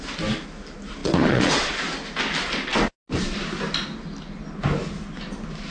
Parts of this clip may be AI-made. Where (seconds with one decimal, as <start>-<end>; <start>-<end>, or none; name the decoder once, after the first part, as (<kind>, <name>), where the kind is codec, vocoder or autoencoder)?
1.0-1.7 (vocoder, Vocos)